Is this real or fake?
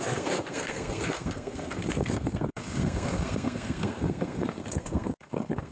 fake